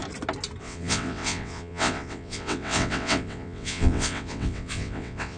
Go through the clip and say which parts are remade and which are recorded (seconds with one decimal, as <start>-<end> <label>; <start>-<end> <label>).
0.0-0.6 recorded; 0.6-5.4 remade

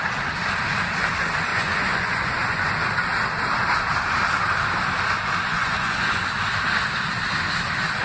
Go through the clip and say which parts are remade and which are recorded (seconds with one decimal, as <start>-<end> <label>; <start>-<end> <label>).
0.0-1.5 recorded; 1.5-2.7 remade; 2.7-5.5 recorded; 5.5-6.2 remade; 6.2-8.0 recorded

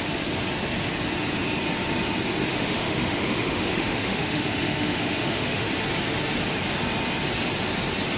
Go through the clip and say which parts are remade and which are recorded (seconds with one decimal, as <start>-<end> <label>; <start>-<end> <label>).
0.0-2.5 recorded; 2.5-5.7 remade; 5.7-8.2 recorded

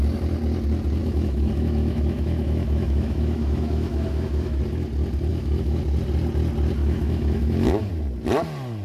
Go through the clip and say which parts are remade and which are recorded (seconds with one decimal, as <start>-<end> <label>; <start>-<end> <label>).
0.0-1.0 recorded; 1.0-4.6 remade; 4.6-5.3 recorded; 5.3-5.8 remade; 5.8-6.8 recorded; 6.8-7.9 remade; 7.9-8.8 recorded

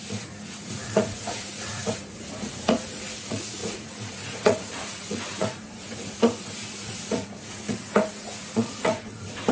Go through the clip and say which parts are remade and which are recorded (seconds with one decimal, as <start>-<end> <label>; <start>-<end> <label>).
0.0-9.5 remade

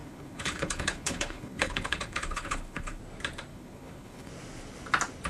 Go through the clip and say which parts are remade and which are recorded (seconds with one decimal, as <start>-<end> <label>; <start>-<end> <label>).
0.0-3.0 remade; 3.0-3.5 recorded; 3.5-4.3 remade; 4.3-5.3 recorded